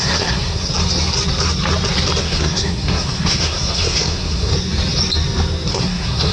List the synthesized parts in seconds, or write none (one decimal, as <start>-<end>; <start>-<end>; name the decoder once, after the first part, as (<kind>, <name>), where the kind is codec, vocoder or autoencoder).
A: 0.0-0.7 (codec, SNAC); 2.2-4.5; 5.7-6.3